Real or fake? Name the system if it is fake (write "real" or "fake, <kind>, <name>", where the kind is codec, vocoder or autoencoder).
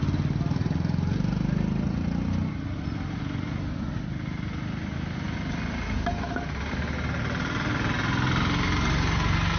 real